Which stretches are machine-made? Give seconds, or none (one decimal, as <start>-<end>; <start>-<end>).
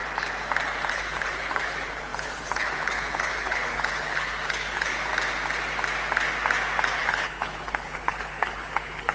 0.9-5.1; 6.9-9.1